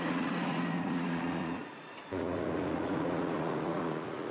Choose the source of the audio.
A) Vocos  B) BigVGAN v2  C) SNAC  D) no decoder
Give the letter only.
A